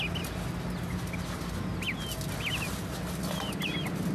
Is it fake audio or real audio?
real